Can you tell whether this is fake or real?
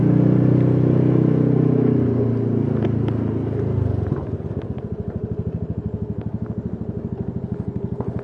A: real